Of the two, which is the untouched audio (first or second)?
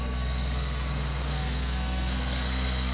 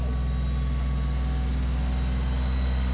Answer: second